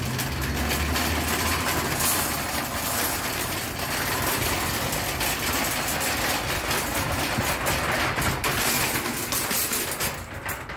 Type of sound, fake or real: real